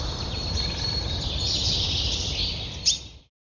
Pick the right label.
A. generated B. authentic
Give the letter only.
A